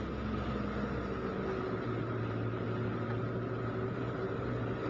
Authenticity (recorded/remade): recorded